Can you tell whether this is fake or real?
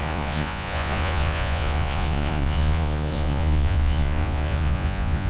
fake